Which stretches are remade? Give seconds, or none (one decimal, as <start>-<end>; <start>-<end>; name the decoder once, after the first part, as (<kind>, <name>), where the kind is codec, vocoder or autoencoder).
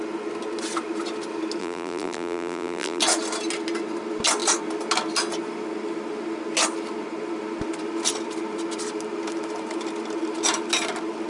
1.6-3.0 (vocoder, BigVGAN v2)